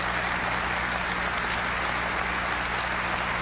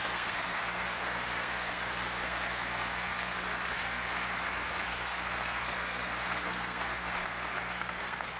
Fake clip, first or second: second